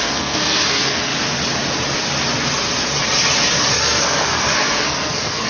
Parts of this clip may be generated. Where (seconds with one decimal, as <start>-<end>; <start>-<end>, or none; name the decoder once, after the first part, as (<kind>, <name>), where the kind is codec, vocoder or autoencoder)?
0.0-1.1 (codec, SNAC); 3.7-5.5